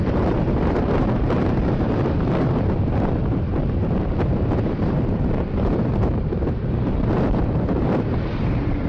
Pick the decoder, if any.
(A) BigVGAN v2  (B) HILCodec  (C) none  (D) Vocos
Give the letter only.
A